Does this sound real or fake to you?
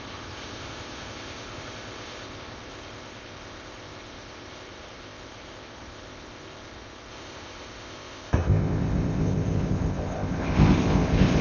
fake